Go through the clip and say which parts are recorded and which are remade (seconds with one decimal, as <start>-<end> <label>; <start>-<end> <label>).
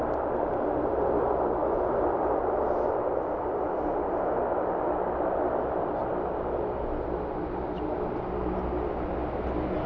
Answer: 0.0-9.9 recorded